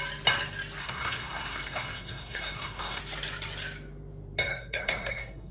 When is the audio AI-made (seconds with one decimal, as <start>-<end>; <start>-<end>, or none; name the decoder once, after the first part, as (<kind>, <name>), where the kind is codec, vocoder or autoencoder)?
0.8-3.0 (codec, SNAC); 4.5-5.5